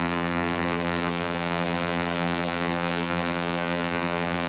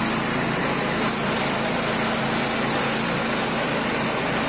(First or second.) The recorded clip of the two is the second